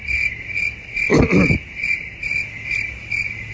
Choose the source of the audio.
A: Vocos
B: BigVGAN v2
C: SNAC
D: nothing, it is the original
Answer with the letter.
D